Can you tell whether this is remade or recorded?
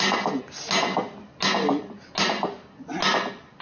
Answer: recorded